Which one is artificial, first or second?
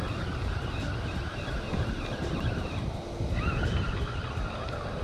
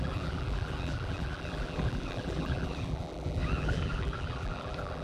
second